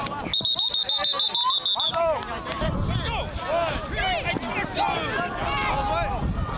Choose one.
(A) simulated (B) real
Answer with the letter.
B